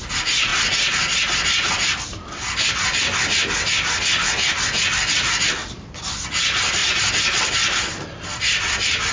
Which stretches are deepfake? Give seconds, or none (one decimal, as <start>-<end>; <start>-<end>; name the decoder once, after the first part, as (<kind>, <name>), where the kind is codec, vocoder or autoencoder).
none